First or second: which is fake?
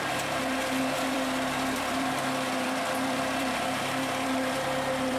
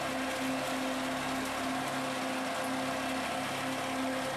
first